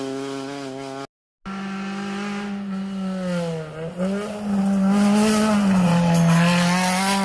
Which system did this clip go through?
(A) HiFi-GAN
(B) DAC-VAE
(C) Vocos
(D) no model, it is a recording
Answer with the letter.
D